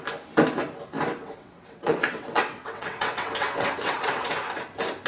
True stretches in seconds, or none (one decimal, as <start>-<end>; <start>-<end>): 0.0-1.2; 4.3-5.1